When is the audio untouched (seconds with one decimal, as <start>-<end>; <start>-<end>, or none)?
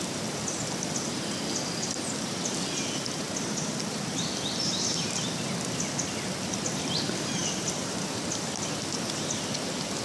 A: 0.0-7.4; 8.0-10.0